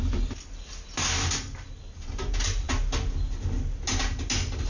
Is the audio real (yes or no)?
yes